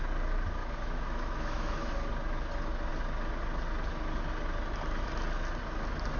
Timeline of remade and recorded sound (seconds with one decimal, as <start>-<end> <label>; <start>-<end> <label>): 0.0-0.6 recorded; 0.6-1.9 remade; 1.9-6.2 recorded